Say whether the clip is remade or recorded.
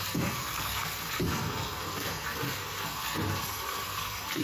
remade